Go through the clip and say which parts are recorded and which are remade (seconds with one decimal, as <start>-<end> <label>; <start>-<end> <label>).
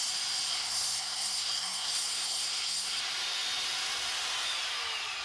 0.0-0.5 recorded; 0.5-3.0 remade; 3.0-5.2 recorded